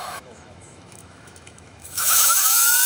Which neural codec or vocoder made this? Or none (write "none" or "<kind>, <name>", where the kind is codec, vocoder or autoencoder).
autoencoder, DAC-VAE